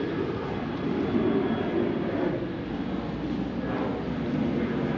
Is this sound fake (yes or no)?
no